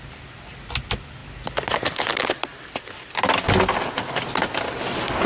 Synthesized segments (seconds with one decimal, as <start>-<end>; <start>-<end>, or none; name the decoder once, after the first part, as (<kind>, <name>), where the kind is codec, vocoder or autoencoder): none